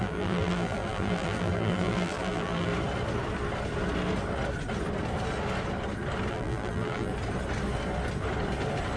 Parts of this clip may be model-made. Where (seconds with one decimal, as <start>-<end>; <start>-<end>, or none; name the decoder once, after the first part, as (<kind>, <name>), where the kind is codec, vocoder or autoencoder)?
0.0-2.7 (vocoder, BigVGAN v2); 6.3-7.1